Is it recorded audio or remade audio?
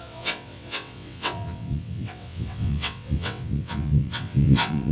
remade